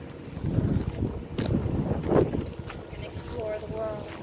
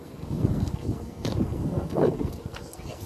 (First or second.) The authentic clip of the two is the first